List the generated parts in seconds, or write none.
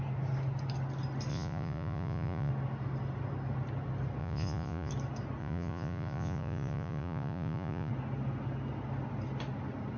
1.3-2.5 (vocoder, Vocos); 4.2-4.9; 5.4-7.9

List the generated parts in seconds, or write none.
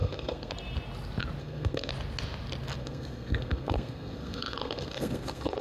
0.0-0.5 (codec, SNAC); 1.4-1.9; 2.8-5.6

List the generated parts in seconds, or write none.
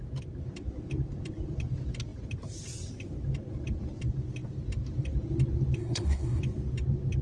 5.8-6.4 (codec, SNAC)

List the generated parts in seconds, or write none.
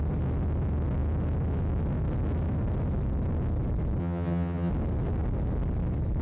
4.0-4.7 (vocoder, HiFi-GAN)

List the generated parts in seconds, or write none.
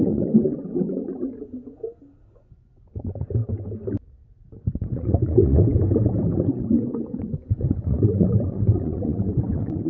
0.0-1.8 (vocoder, Vocos); 2.3-3.4; 4.6-5.7; 6.5-9.9